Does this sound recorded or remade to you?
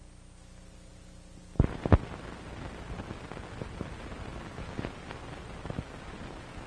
recorded